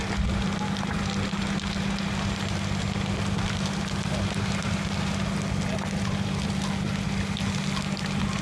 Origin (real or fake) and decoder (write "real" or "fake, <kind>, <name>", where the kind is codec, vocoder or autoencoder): real